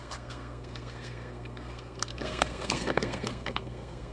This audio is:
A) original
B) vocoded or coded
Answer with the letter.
B